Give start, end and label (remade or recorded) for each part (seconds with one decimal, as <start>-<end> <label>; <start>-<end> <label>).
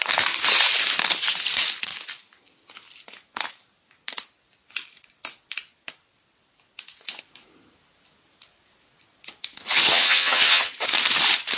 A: 0.0-9.6 recorded; 9.6-10.7 remade; 10.7-11.6 recorded